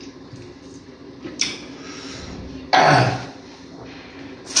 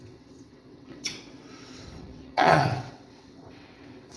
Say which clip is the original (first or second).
first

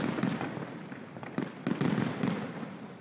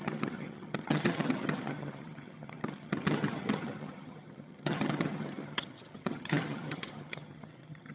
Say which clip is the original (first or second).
first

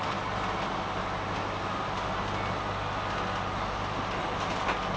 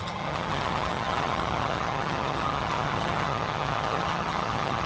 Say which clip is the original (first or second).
first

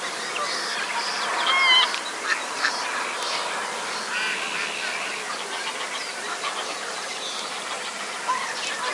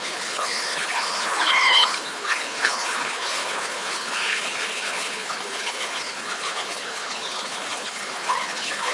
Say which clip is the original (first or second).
first